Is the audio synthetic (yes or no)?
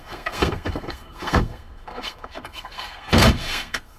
yes